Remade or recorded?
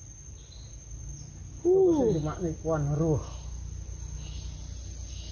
recorded